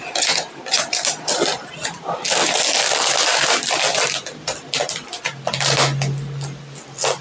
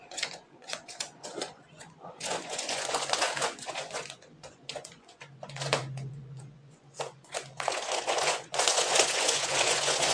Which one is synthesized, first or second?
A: second